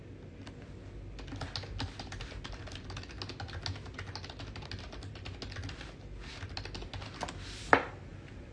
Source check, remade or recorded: recorded